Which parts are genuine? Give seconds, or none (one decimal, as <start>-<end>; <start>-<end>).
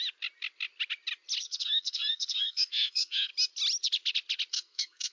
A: 0.0-1.4; 3.3-4.5